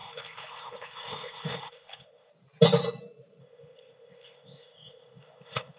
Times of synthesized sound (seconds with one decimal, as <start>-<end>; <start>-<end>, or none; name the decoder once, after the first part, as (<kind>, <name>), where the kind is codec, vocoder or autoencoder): 0.0-2.3 (codec, ZipCodec); 3.4-5.8